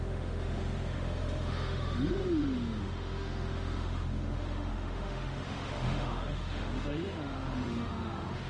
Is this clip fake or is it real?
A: fake